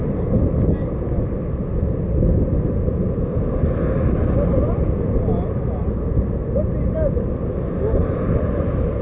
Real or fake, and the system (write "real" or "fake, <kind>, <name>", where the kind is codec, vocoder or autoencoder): real